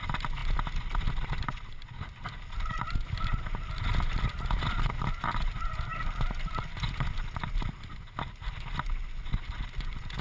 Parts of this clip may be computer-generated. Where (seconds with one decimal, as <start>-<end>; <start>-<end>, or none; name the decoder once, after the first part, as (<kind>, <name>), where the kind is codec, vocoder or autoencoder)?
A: none